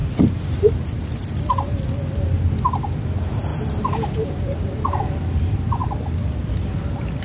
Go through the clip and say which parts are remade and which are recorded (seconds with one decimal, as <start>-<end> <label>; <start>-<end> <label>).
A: 0.0-1.3 remade; 1.3-3.5 recorded; 3.5-5.0 remade; 5.0-5.8 recorded; 5.8-6.4 remade; 6.4-7.2 recorded